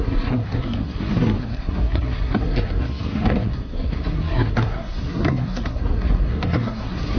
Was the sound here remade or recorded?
remade